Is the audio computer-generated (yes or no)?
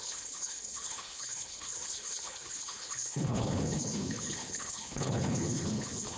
yes